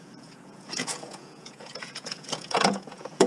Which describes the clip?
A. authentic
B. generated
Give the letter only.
B